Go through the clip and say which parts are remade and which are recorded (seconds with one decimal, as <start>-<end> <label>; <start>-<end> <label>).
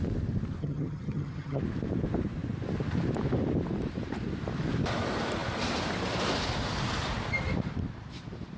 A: 0.0-0.6 recorded; 0.6-1.6 remade; 1.6-8.6 recorded